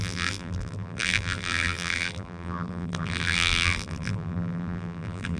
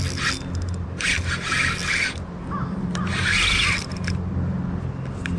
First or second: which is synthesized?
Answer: first